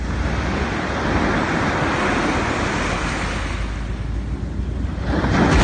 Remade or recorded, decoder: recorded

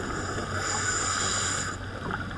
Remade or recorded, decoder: recorded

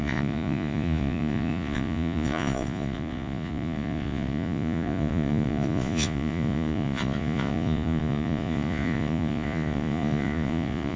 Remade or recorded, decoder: remade, vocoder, Vocos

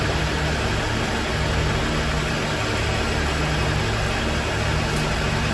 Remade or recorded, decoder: recorded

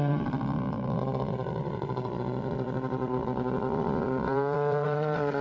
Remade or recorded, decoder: remade, vocoder, Vocos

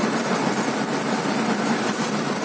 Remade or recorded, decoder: recorded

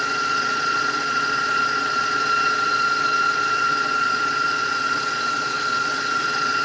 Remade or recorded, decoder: remade, vocoder, Vocos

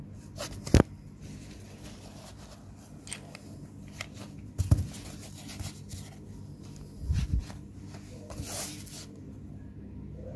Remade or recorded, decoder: recorded